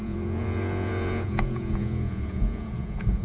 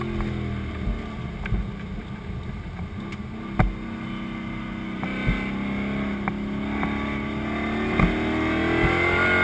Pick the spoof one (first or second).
first